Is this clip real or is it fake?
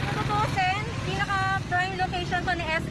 real